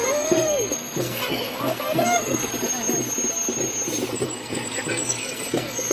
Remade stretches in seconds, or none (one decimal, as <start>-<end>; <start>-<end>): 0.0-2.5; 4.1-5.9